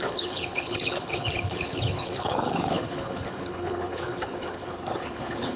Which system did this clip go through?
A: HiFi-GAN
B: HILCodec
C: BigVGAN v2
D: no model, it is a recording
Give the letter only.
B